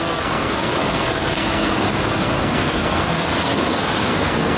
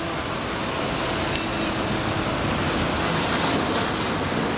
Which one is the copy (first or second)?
first